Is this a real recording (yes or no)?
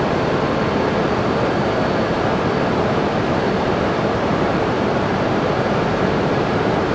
no